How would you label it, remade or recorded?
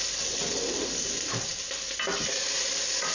recorded